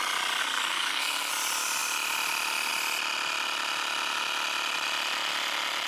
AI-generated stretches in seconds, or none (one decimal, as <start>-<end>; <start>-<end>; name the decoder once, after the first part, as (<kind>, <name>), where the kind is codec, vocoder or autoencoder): 0.4-1.3 (codec, SNAC)